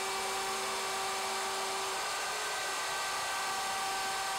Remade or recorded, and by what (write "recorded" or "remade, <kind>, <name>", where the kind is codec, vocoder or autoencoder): recorded